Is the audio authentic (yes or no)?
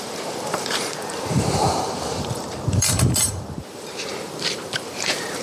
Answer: no